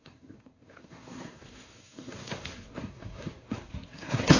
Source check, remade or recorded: remade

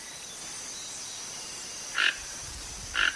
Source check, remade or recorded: recorded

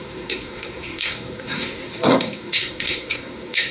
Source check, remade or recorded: remade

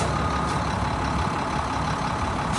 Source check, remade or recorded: recorded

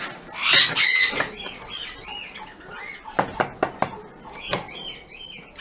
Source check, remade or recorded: recorded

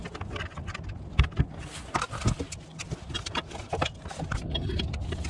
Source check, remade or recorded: recorded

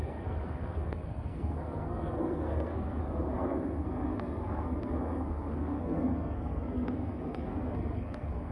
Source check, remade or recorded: remade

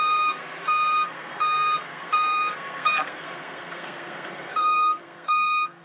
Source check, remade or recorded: remade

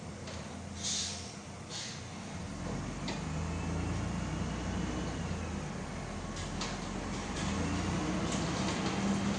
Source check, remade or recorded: recorded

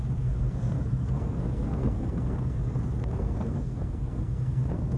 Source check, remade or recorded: remade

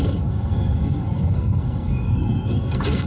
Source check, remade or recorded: remade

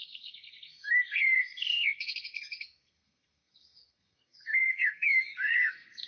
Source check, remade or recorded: remade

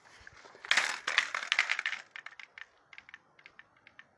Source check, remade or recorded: recorded